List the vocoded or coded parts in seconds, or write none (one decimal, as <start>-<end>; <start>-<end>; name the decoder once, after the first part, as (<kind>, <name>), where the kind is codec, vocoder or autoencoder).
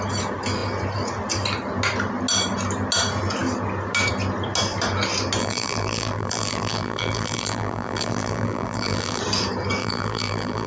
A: 5.4-9.2 (vocoder, BigVGAN v2); 9.8-10.7